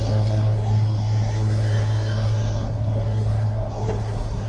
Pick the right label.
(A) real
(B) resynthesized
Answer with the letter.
B